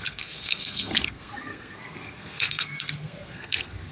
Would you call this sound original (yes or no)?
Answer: no